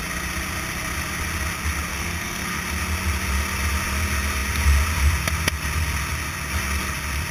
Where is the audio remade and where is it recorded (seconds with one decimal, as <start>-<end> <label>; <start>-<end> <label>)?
0.0-1.9 recorded; 1.9-2.6 remade; 2.6-7.3 recorded